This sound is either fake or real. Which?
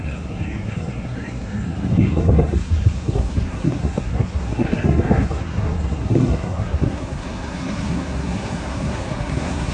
fake